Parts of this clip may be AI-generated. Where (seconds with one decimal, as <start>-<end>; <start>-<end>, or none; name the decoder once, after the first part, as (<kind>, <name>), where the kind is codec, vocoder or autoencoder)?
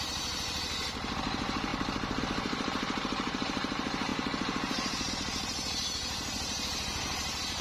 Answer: 0.0-1.7 (vocoder, BigVGAN v2); 2.2-7.6